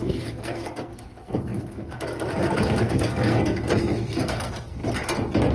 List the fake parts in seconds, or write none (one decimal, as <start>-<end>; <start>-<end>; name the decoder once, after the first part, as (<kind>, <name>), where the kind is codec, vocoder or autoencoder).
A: 0.0-4.8 (codec, SNAC)